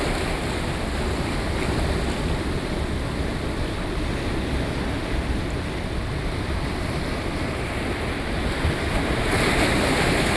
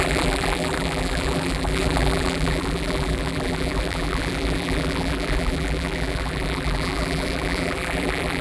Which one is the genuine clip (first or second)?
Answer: first